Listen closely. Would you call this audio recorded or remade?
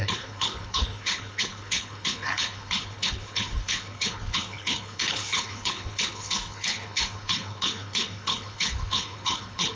remade